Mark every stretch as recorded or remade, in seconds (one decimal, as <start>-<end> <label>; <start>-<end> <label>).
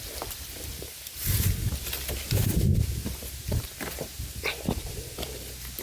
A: 0.0-0.7 recorded; 0.7-1.7 remade; 1.7-2.7 recorded; 2.7-5.8 remade